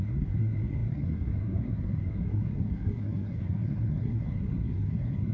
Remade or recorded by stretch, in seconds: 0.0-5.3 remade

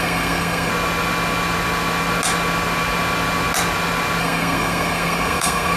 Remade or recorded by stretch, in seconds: 0.0-0.7 remade; 0.7-4.2 recorded; 4.2-5.8 remade

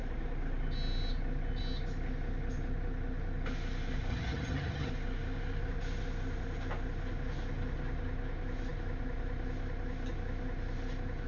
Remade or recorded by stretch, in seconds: 0.0-4.1 recorded; 4.1-4.9 remade; 4.9-11.3 recorded

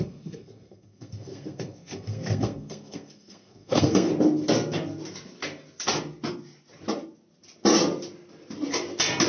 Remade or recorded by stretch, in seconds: 0.0-4.1 remade; 4.1-9.3 recorded

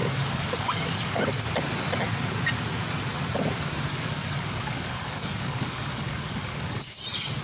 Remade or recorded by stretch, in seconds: 0.0-1.2 remade; 1.2-3.9 recorded; 3.9-7.0 remade; 7.0-7.4 recorded

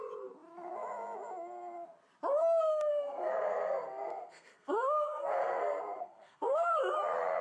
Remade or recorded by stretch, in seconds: 0.0-2.4 recorded; 2.4-6.8 remade; 6.8-7.4 recorded